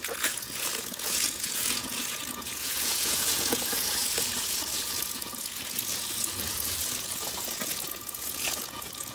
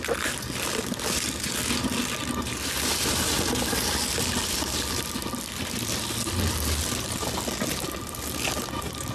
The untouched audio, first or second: second